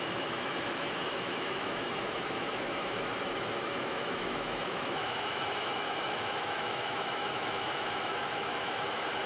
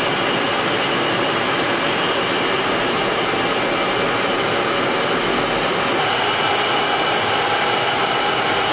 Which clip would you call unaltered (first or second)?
second